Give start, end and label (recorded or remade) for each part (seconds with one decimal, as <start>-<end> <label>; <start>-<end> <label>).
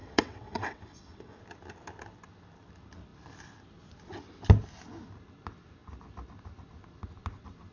0.0-1.4 remade; 1.4-7.7 recorded